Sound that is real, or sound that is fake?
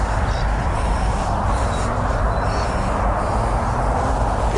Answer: real